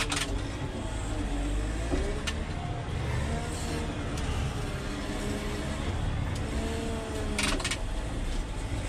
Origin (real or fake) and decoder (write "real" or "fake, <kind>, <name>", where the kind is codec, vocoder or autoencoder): real